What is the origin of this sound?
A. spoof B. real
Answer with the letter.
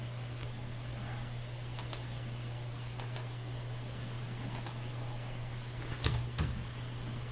A